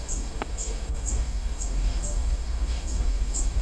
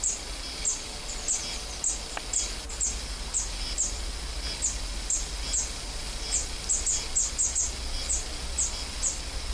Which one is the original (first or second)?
second